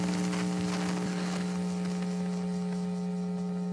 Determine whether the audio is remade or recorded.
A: recorded